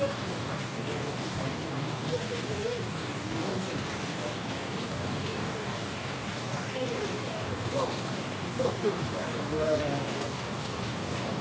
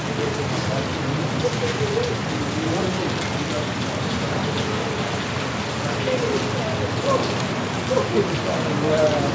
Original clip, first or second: second